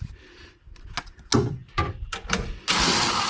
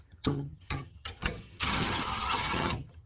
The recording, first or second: first